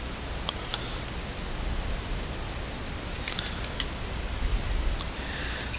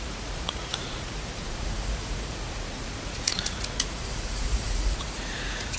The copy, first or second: second